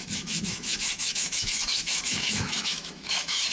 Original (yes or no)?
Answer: no